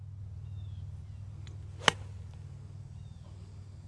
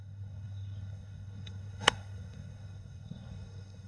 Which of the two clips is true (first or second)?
first